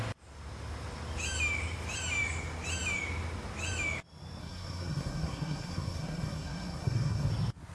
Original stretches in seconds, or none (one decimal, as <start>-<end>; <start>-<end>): 0.0-4.4; 7.3-7.7